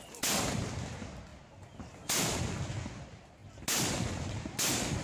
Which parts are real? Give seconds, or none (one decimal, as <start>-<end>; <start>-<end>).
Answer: 0.0-5.0